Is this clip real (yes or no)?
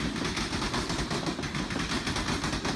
yes